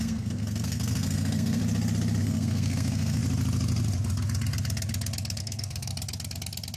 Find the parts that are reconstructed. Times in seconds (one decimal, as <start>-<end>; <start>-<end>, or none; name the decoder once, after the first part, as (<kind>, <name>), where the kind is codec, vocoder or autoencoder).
0.0-1.6 (codec, SNAC); 2.2-3.2; 5.4-5.9